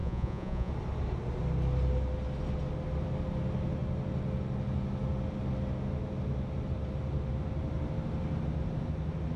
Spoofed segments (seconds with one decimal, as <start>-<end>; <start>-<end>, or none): 0.0-0.7